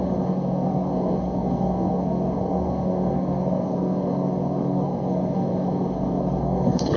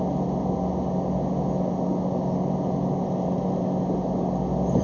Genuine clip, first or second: second